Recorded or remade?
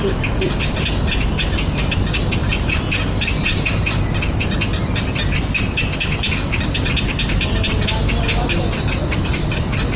recorded